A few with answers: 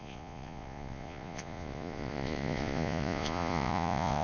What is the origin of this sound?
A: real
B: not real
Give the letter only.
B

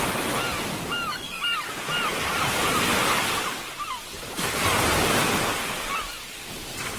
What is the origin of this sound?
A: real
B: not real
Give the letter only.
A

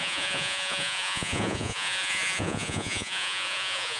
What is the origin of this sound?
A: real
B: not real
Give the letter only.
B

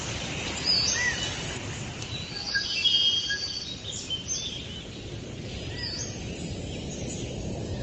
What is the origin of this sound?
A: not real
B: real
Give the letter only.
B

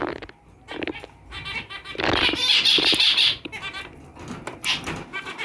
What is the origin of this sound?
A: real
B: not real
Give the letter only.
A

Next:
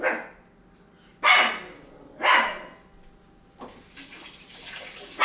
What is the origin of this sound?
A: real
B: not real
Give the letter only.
A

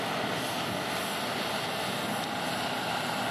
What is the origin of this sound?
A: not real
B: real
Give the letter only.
B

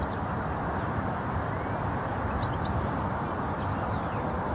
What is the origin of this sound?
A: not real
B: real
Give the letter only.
B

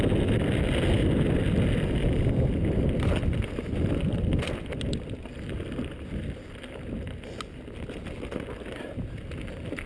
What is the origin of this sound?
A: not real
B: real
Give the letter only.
B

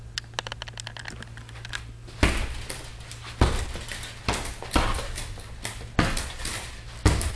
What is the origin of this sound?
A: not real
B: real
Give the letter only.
B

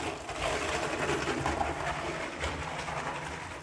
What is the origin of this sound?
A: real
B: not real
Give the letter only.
A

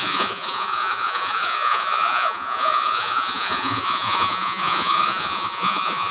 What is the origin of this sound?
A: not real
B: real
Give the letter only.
A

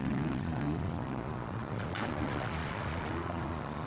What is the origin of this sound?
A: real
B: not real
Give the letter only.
B